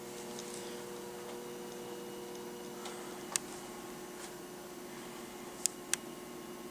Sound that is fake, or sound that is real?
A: real